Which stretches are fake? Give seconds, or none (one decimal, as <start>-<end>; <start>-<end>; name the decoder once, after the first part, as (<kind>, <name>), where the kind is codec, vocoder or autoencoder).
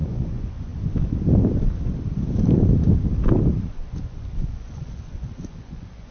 0.0-0.7 (vocoder, Vocos); 3.7-6.1